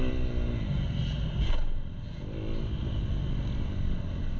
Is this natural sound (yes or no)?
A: yes